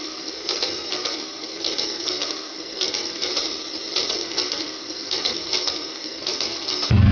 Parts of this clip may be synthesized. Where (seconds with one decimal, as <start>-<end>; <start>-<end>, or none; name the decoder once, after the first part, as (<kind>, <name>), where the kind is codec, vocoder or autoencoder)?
0.0-3.3 (codec, SNAC); 4.1-7.1